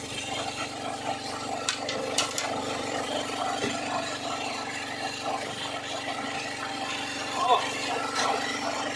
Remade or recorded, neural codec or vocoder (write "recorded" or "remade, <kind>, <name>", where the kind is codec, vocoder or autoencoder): remade, vocoder, BigVGAN v2